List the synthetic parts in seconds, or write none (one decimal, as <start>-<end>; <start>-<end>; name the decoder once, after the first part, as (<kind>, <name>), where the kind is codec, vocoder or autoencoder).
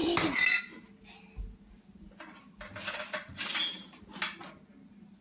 none